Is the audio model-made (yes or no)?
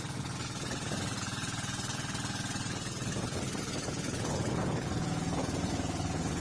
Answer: yes